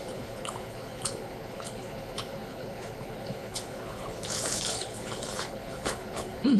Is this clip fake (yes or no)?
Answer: yes